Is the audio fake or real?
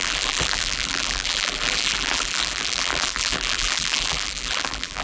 fake